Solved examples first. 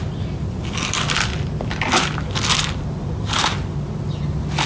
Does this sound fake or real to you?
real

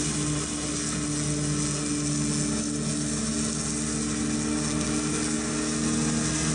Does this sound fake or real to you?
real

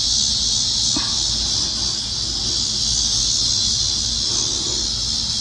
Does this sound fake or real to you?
real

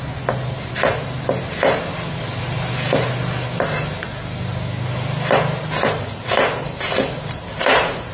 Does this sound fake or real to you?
real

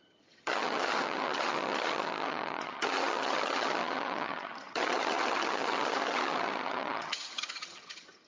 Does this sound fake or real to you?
fake